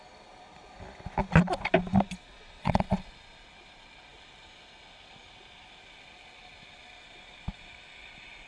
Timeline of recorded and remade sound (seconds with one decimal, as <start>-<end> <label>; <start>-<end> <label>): 0.0-2.3 recorded; 2.3-3.1 remade; 3.1-8.5 recorded

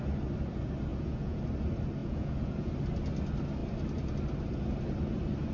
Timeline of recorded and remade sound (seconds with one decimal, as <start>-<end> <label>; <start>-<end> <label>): 0.0-0.9 recorded; 0.9-1.4 remade; 1.4-2.0 recorded; 2.0-2.7 remade; 2.7-5.5 recorded

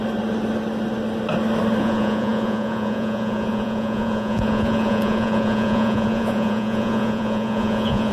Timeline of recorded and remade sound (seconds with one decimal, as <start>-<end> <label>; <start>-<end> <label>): 0.0-1.8 recorded; 1.8-8.1 remade

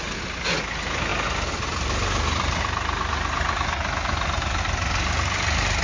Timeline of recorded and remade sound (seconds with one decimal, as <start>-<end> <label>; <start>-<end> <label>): 0.0-5.8 recorded

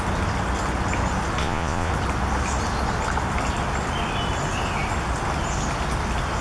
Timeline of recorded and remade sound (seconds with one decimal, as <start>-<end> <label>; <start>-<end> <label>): 0.0-1.4 recorded; 1.4-1.9 remade; 1.9-6.4 recorded

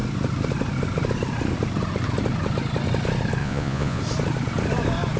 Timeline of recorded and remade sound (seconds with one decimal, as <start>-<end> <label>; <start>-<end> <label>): 0.0-3.4 recorded; 3.4-4.0 remade; 4.0-5.2 recorded